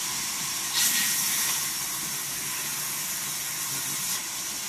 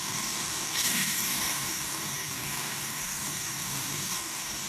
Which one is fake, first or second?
second